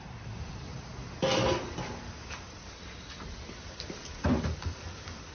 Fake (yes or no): yes